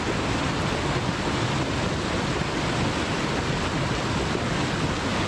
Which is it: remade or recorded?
recorded